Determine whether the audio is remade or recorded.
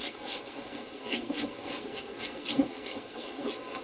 remade